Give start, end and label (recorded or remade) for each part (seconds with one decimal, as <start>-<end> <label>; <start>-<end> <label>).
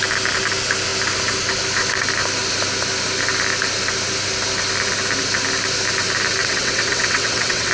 0.0-6.4 recorded; 6.4-7.7 remade